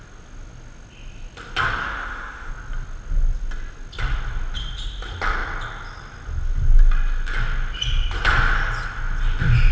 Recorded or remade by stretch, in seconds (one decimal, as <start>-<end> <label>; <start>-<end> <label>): 0.0-1.8 recorded; 1.8-2.5 remade; 2.5-9.7 recorded

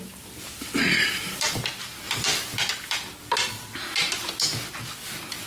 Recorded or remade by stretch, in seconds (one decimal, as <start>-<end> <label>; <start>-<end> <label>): 0.0-5.5 recorded

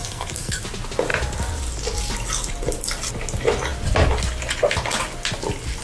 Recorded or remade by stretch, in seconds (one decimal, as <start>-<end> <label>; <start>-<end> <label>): 0.0-0.6 remade; 0.6-5.8 recorded